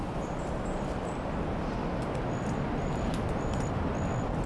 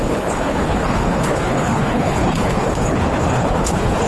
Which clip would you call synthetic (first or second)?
second